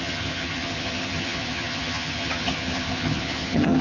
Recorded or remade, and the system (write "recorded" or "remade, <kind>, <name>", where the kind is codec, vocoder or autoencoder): remade, vocoder, HiFi-GAN